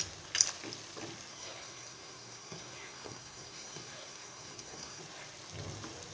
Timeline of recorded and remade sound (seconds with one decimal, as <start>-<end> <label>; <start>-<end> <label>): 0.0-1.3 recorded; 1.3-5.0 remade; 5.0-6.1 recorded